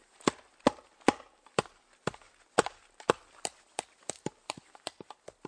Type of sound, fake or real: real